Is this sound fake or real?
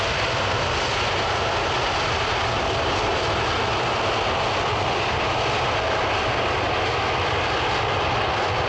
real